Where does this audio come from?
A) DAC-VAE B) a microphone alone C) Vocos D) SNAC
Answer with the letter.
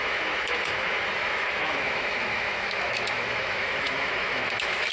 A